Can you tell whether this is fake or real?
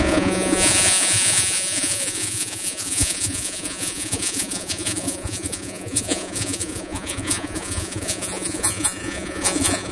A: fake